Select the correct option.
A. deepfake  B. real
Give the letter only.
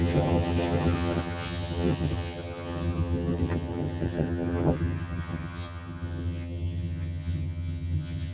A